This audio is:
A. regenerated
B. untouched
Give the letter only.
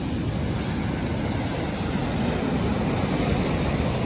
B